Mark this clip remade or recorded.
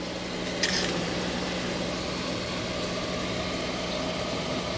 recorded